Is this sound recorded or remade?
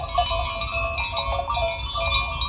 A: recorded